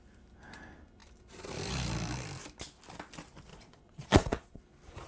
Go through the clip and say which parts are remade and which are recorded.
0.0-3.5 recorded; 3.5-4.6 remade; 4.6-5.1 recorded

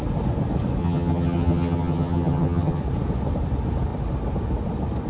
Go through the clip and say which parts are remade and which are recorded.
0.0-0.8 recorded; 0.8-2.8 remade; 2.8-5.1 recorded

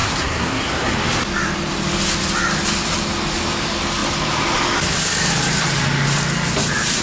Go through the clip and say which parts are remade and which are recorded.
0.0-0.9 remade; 0.9-7.0 recorded

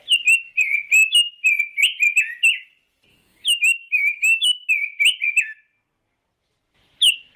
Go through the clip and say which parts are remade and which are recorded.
0.0-3.1 recorded; 3.1-4.7 remade; 4.7-7.4 recorded

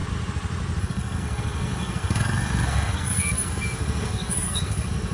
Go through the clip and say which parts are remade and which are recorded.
0.0-0.8 recorded; 0.8-5.1 remade